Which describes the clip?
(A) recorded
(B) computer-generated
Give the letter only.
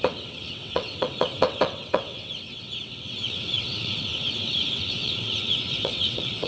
B